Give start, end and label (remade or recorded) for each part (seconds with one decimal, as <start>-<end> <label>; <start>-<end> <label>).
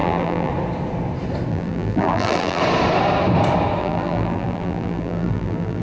0.0-0.5 remade; 0.5-1.5 recorded; 1.5-2.6 remade; 2.6-3.8 recorded; 3.8-5.8 remade